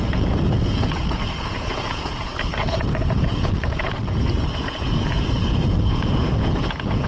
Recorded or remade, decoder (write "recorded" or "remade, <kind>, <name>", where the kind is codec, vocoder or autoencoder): remade, vocoder, Vocos